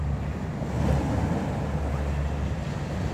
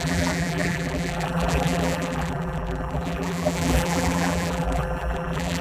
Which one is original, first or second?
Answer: first